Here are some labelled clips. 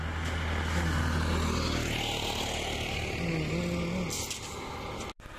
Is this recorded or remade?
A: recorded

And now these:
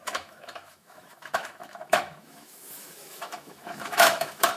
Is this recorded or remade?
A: remade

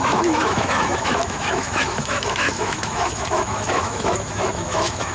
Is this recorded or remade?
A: remade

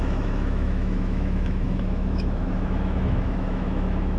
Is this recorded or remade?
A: remade